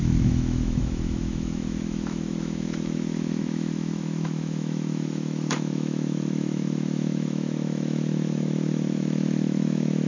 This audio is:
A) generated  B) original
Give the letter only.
A